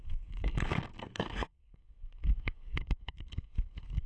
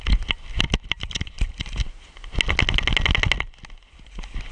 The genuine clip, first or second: second